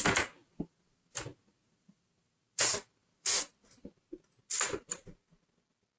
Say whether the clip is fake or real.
real